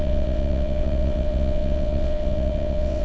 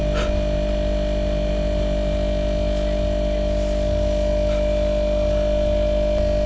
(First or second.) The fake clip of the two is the first